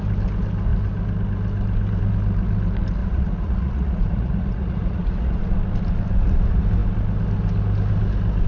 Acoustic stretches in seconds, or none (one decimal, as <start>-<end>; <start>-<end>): 0.0-3.0; 5.4-8.5

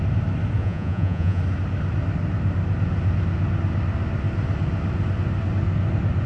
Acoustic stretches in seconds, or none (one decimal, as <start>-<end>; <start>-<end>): 0.0-0.6; 1.4-6.3

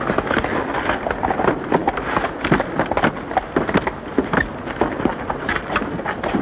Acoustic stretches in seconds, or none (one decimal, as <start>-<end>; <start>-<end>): 0.0-6.4

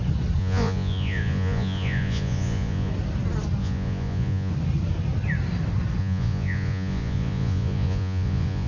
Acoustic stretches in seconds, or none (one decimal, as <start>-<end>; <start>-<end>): 0.0-0.4; 2.9-3.6; 4.5-6.0